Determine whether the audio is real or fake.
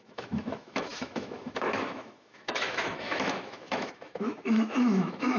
fake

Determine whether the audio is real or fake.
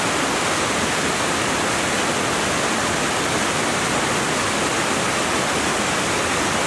real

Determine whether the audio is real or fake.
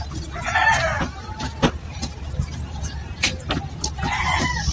real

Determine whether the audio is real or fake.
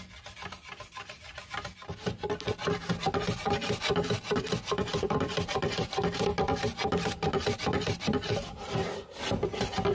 real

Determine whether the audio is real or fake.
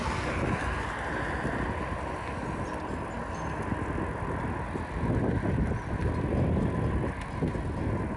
real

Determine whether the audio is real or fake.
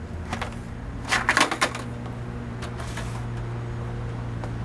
real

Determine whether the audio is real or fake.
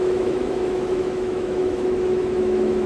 fake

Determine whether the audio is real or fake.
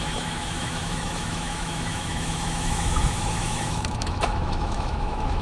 fake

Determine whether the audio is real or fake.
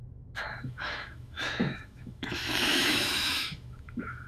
fake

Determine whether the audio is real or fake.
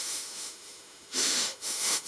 fake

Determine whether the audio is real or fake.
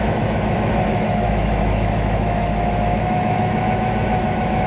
fake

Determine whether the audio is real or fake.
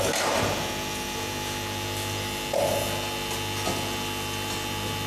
real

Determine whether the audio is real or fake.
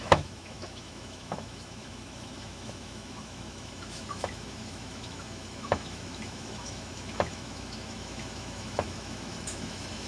fake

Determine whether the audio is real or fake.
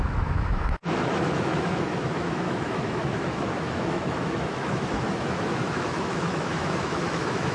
fake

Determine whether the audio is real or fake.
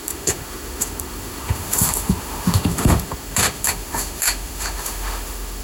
fake